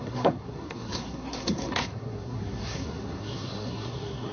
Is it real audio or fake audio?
fake